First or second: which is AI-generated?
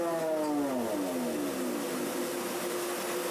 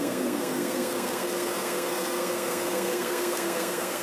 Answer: second